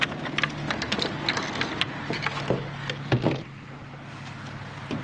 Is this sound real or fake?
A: real